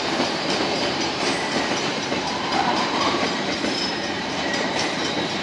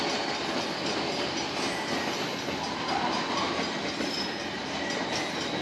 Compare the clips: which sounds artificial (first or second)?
first